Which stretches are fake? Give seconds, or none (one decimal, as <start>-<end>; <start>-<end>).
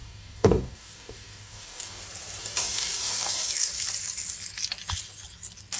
0.0-2.0; 2.4-3.7